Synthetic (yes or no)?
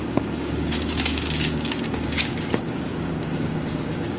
yes